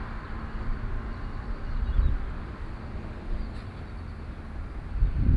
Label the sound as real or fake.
real